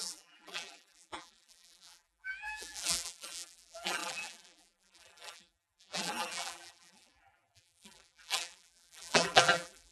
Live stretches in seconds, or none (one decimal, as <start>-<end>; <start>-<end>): none